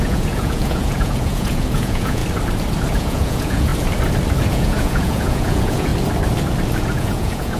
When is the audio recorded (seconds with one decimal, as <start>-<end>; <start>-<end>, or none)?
2.2-2.9; 3.7-4.5; 5.9-6.8